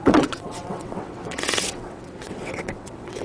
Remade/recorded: remade